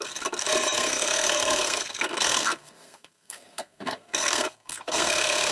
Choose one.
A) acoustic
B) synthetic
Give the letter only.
B